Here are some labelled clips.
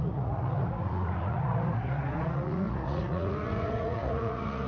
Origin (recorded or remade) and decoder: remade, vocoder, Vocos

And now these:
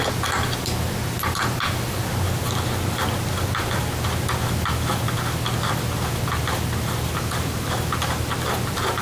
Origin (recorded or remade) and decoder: recorded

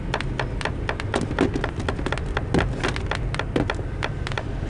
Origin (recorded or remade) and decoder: recorded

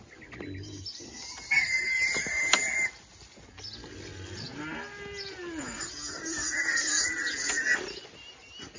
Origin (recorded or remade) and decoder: recorded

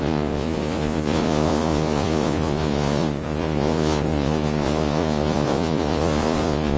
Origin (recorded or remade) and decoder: remade, vocoder, Vocos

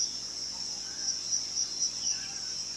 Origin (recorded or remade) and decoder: remade, vocoder, Vocos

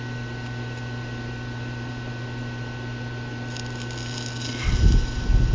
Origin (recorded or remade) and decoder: recorded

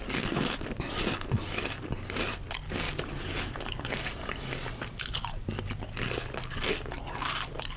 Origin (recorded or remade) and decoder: recorded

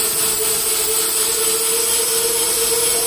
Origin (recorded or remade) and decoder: recorded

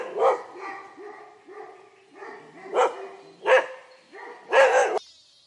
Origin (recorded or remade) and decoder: recorded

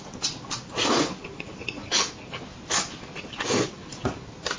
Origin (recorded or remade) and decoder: recorded